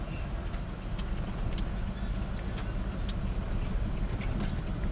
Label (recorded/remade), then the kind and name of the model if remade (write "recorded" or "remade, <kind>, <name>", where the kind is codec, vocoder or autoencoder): recorded